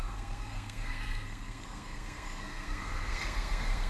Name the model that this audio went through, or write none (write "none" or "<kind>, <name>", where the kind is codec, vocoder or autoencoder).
codec, SNAC